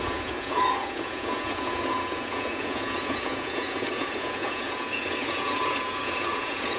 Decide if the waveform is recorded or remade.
remade